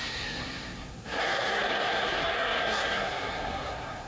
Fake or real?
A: fake